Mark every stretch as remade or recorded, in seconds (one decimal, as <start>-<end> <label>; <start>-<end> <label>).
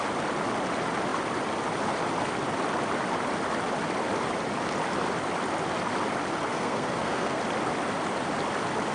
0.0-6.5 recorded; 6.5-7.4 remade; 7.4-8.9 recorded